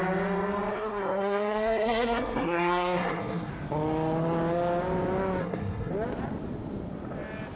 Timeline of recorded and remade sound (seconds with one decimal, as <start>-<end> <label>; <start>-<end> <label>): 0.0-0.7 recorded; 0.7-3.5 remade; 3.5-5.4 recorded; 5.4-5.9 remade; 5.9-7.6 recorded